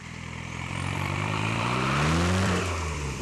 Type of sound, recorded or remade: remade